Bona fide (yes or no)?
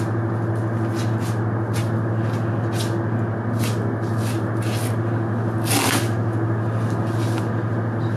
yes